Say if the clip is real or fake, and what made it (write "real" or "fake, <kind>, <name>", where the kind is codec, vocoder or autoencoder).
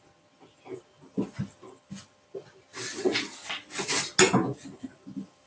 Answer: real